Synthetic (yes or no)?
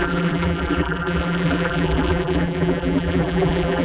yes